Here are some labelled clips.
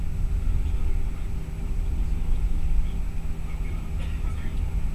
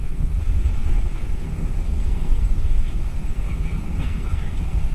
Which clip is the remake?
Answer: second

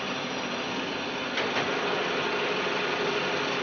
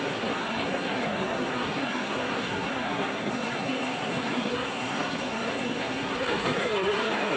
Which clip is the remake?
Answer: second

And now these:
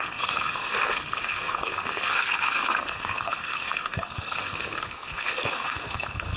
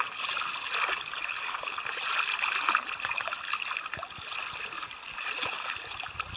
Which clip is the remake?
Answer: first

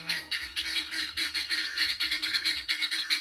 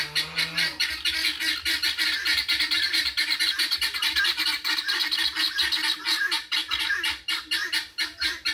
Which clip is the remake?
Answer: first